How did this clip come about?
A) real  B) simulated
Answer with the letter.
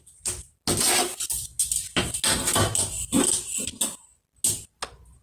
A